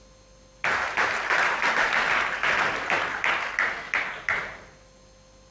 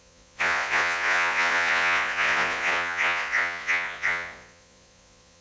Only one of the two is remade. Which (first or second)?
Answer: second